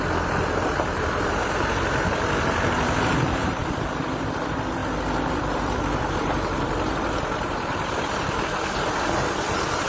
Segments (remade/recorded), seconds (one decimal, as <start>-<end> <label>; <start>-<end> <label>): 0.0-4.8 remade; 4.8-5.3 recorded; 5.3-9.9 remade